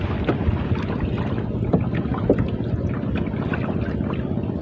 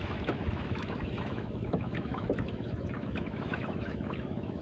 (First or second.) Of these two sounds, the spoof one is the second